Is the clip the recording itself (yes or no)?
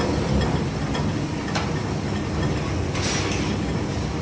yes